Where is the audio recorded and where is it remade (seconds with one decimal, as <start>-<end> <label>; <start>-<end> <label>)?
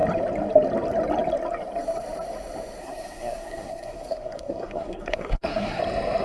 0.0-2.8 recorded; 2.8-5.8 remade; 5.8-6.2 recorded